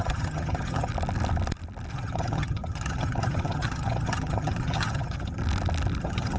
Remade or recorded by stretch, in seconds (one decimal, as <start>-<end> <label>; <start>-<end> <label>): 0.0-0.9 remade; 0.9-1.9 recorded; 1.9-5.4 remade; 5.4-6.0 recorded; 6.0-6.4 remade